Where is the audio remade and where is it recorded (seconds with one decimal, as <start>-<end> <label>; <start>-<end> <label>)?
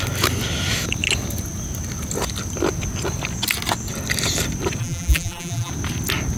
0.0-4.8 recorded; 4.8-5.7 remade; 5.7-6.4 recorded